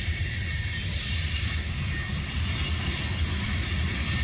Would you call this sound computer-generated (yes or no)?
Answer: yes